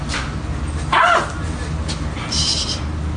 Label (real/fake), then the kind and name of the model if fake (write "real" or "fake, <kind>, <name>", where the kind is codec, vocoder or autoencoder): real